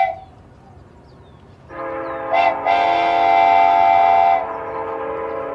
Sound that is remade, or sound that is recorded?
recorded